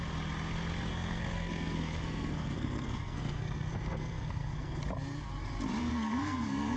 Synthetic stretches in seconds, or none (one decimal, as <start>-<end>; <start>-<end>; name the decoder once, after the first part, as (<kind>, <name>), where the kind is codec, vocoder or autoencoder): 0.9-4.8 (codec, SNAC); 5.8-6.8